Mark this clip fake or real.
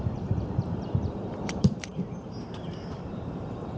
fake